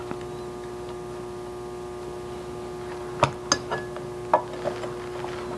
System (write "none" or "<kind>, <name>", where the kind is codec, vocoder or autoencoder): none